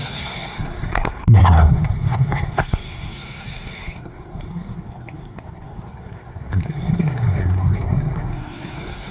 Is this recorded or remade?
remade